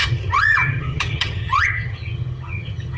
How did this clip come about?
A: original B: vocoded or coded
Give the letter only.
B